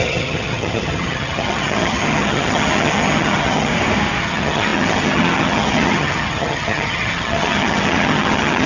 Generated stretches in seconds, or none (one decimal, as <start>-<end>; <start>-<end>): 0.0-3.7; 4.2-8.7